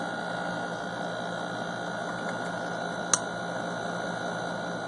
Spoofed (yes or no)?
no